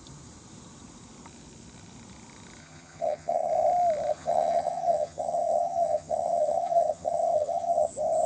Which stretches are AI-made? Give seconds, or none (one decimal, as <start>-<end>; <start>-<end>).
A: 2.6-3.5; 4.1-7.9